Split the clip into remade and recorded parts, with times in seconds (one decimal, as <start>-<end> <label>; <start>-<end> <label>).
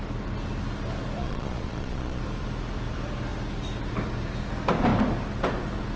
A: 0.0-1.2 recorded; 1.2-2.2 remade; 2.2-6.0 recorded